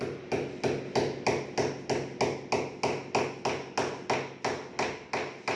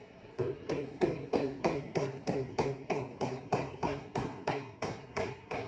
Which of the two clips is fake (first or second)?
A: second